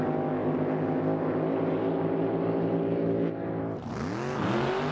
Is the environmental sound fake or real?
real